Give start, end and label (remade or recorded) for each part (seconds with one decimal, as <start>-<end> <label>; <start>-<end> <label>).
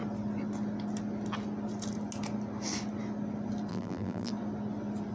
0.0-3.7 recorded; 3.7-4.3 remade; 4.3-5.1 recorded